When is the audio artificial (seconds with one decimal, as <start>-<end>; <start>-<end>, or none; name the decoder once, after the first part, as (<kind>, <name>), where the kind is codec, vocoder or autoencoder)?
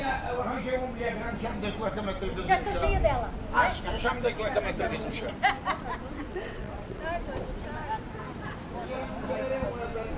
6.3-7.0 (vocoder, WaveNeXt)